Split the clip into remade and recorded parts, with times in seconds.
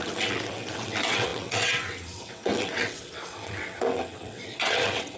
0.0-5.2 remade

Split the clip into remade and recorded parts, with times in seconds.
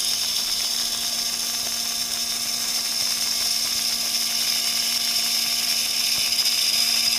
0.0-7.2 recorded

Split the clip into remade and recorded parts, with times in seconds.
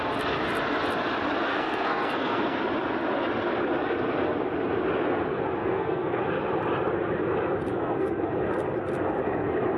0.0-1.5 recorded; 1.5-2.6 remade; 2.6-5.6 recorded; 5.6-6.2 remade; 6.2-7.7 recorded; 7.7-8.3 remade; 8.3-9.8 recorded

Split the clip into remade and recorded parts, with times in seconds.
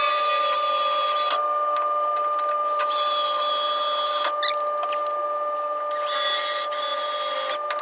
0.0-7.8 recorded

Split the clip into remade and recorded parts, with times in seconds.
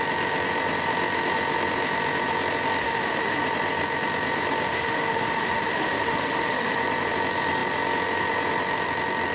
0.0-2.8 recorded; 2.8-3.4 remade; 3.4-4.7 recorded; 4.7-6.8 remade; 6.8-9.3 recorded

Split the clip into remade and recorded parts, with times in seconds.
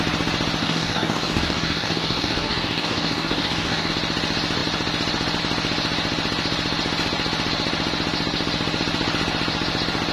0.0-0.6 recorded; 0.6-3.9 remade; 3.9-10.1 recorded